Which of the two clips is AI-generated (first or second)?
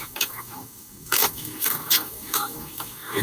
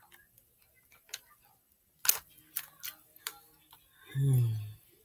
first